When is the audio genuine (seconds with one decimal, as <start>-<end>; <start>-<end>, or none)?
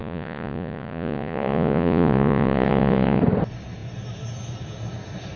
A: 3.2-5.4